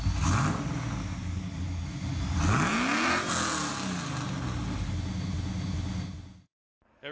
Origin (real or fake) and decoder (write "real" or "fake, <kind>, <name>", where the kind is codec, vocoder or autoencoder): real